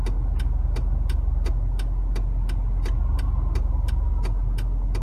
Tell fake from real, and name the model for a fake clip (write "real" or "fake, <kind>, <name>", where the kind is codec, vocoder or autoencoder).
real